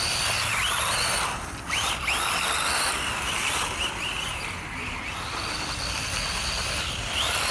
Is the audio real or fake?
real